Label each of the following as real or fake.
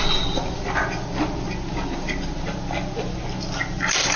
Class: real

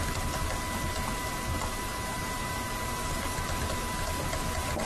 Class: real